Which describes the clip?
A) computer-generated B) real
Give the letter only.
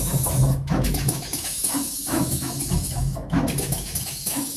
A